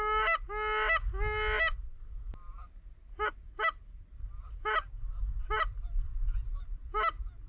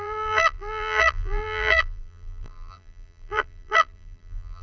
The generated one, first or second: second